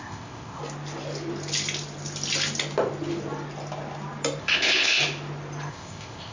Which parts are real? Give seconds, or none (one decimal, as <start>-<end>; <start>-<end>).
0.6-4.4; 5.0-5.7